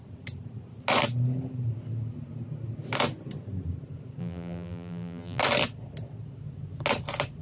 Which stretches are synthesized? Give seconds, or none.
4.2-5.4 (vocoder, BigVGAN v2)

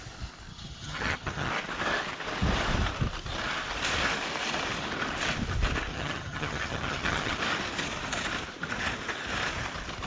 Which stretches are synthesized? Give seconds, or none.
0.5-1.5 (vocoder, HiFi-GAN); 5.9-7.4

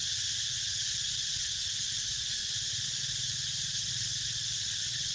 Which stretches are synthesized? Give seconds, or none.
none

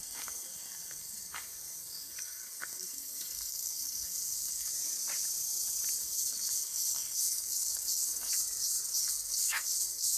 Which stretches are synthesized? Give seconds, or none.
0.0-4.7 (codec, SNAC); 6.0-8.3; 9.0-10.2